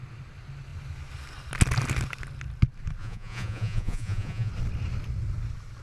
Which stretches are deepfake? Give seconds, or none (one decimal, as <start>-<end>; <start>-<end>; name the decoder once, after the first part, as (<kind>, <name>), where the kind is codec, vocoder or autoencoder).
3.0-4.5 (vocoder, Vocos)